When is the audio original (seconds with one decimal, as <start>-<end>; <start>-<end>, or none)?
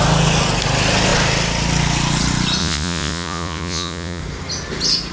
0.0-2.6; 4.2-5.1